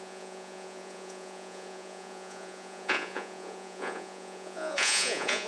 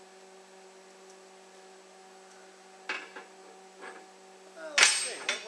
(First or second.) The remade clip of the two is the first